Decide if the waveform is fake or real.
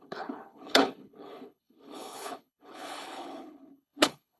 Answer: fake